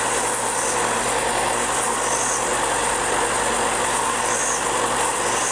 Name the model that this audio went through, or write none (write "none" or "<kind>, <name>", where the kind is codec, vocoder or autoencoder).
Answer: none